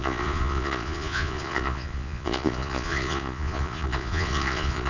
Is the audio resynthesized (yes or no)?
yes